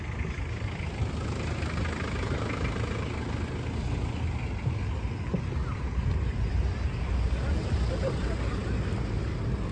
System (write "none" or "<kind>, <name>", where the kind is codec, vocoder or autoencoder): none